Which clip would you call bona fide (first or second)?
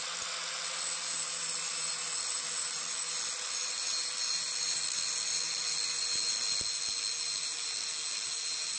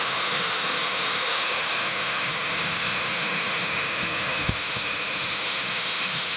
first